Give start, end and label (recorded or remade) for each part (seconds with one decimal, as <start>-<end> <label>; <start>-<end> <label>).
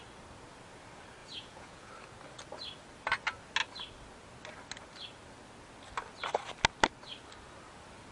0.0-1.2 recorded; 1.2-1.9 remade; 1.9-8.1 recorded